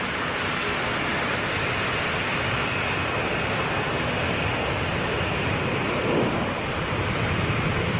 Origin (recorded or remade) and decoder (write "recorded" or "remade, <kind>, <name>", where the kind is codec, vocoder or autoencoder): recorded